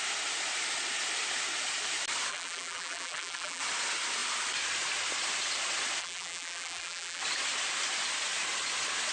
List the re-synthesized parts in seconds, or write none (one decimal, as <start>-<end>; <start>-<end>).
2.3-3.6; 6.0-7.2